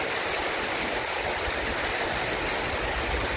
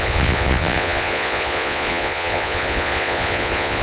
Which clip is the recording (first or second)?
first